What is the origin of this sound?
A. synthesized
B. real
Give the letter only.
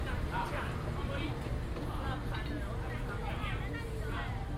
B